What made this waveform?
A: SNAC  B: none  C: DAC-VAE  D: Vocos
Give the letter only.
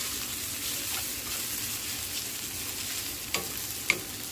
B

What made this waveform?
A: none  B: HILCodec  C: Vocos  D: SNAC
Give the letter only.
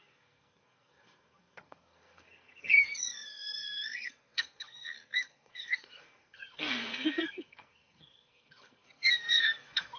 D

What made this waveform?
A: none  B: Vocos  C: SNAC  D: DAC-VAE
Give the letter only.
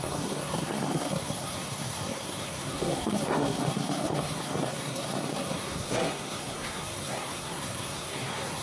C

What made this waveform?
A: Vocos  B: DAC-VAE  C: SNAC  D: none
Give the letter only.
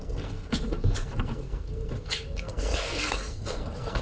C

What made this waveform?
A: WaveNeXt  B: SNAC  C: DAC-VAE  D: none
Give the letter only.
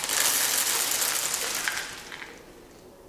D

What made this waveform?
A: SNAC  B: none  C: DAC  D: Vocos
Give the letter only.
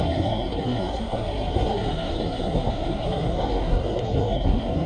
A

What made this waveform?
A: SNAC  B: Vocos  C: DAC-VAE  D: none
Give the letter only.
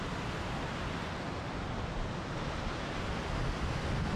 D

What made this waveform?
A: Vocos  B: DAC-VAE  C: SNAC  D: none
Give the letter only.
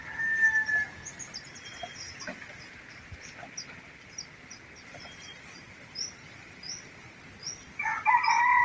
D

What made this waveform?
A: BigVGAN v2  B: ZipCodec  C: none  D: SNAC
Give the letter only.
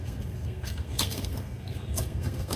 D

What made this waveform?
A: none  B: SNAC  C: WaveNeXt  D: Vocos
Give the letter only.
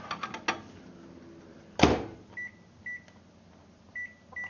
A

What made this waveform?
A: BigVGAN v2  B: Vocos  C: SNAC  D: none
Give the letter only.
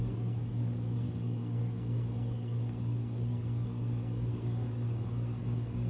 C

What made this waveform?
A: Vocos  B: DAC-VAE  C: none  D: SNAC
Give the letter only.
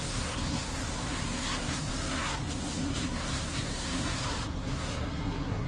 D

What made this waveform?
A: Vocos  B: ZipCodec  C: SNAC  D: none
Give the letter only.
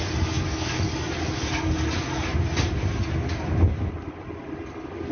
D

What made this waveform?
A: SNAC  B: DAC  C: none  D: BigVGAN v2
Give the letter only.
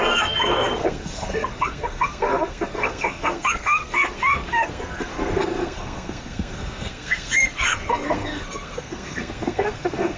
A